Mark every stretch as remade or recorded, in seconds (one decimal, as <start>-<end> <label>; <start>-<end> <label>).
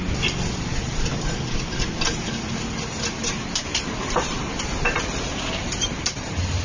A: 0.0-0.7 recorded; 0.7-2.5 remade; 2.5-3.2 recorded; 3.2-4.6 remade; 4.6-5.6 recorded; 5.6-6.6 remade